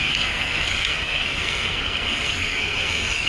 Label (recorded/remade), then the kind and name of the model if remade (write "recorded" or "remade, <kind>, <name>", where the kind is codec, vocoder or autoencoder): remade, codec, SNAC